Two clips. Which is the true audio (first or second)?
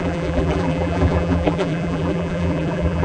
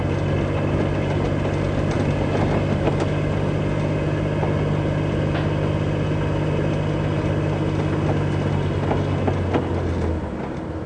second